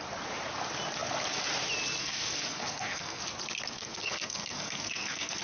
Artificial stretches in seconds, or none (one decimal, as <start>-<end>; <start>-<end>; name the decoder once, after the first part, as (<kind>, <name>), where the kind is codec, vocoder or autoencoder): 2.0-3.2 (codec, SNAC); 3.8-5.4